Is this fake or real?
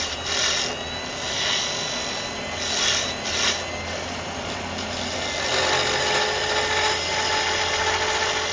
real